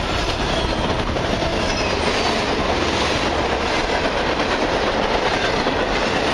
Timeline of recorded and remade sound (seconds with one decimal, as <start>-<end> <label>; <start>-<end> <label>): 0.0-1.5 remade; 1.5-5.3 recorded; 5.3-6.3 remade